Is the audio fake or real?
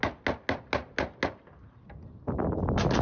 real